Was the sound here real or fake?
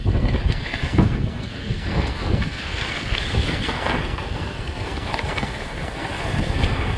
fake